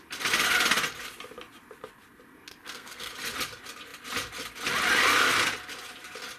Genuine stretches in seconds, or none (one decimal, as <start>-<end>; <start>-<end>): 0.0-2.5; 3.1-6.4